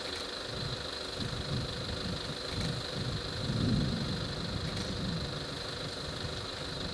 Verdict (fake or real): real